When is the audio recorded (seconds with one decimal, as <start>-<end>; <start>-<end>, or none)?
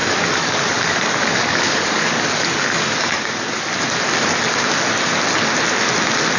3.7-6.4